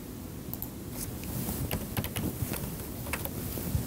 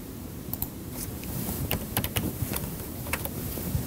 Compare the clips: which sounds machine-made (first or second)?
second